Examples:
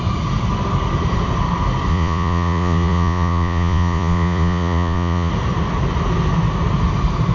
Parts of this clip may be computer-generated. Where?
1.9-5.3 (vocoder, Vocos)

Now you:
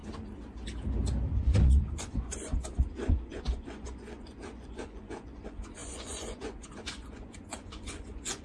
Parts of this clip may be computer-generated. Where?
1.3-8.4 (vocoder, Vocos)

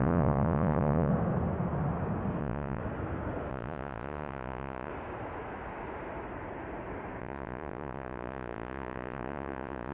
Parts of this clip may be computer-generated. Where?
0.0-1.1 (vocoder, Vocos); 2.4-2.8; 3.5-4.9; 7.2-9.9

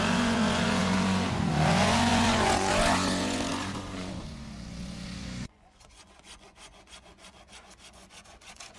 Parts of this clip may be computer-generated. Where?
0.0-8.8 (vocoder, Vocos)